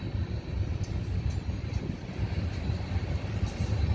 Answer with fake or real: real